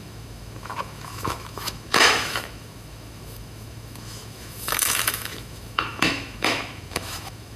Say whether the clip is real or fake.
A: fake